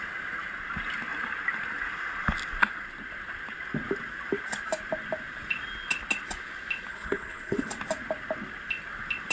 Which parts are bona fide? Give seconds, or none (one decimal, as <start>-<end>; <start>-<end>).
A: 0.0-6.9; 7.7-9.3